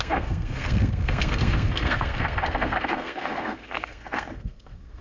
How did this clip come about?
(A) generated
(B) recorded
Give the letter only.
A